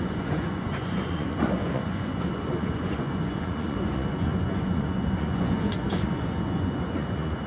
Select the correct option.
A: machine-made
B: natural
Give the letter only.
A